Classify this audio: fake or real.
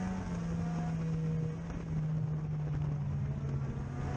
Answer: real